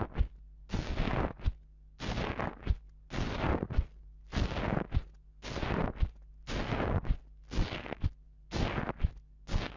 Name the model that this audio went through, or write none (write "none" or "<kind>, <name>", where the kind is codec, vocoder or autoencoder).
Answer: none